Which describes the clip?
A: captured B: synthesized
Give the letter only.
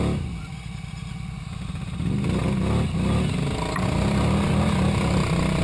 A